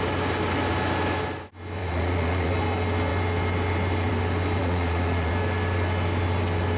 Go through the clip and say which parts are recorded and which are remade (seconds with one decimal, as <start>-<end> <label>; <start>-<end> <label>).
0.0-1.8 recorded; 1.8-2.5 remade; 2.5-4.6 recorded; 4.6-5.3 remade; 5.3-6.8 recorded